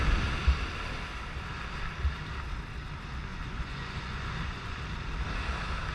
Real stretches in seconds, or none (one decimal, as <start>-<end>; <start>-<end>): 0.0-3.3; 4.8-5.9